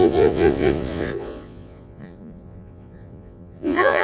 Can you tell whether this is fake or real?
fake